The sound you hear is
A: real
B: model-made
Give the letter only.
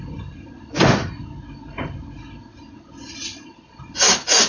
A